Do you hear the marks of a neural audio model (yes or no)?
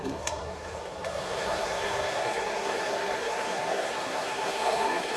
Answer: yes